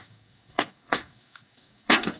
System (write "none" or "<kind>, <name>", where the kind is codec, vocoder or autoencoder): codec, DAC